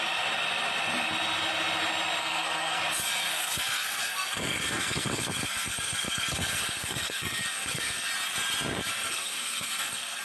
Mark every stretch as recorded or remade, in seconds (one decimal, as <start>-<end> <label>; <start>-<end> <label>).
0.0-2.2 recorded; 2.2-2.8 remade; 2.8-3.3 recorded; 3.3-8.1 remade; 8.1-8.9 recorded; 8.9-10.2 remade